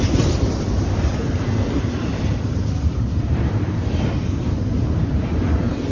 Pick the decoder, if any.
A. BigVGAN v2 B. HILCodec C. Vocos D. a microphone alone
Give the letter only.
A